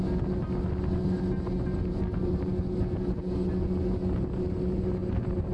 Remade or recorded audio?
recorded